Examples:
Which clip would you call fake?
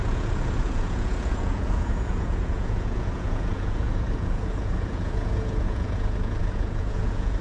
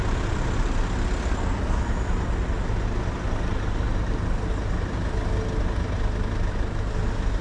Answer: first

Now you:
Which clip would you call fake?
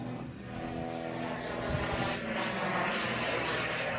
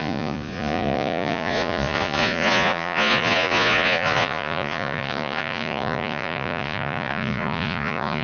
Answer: second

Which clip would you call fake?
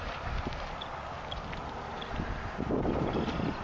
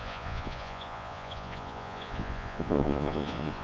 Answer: second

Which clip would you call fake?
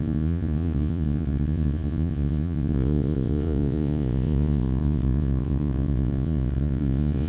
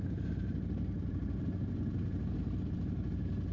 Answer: first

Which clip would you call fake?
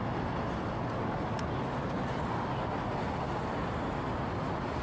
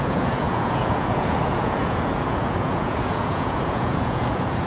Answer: second